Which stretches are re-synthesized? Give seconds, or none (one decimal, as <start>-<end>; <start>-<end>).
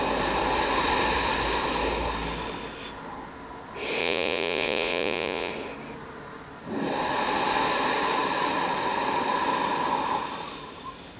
4.0-5.5